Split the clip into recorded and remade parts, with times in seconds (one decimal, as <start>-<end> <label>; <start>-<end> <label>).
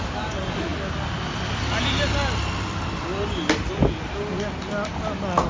0.0-5.5 recorded